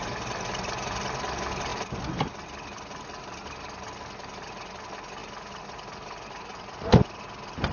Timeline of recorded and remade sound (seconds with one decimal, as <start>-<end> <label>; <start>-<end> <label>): 0.0-7.7 recorded